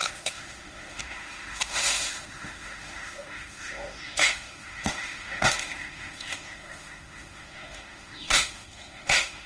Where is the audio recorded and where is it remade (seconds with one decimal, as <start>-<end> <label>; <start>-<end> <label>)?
0.0-9.5 remade